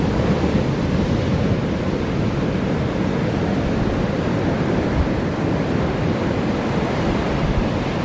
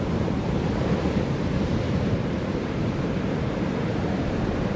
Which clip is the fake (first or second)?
second